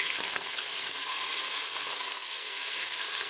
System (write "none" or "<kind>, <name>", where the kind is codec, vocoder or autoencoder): codec, SNAC